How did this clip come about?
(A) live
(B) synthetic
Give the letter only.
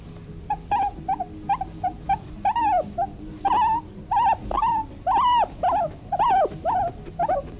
A